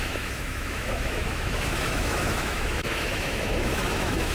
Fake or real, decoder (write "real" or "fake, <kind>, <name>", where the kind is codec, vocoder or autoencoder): fake, autoencoder, DAC-VAE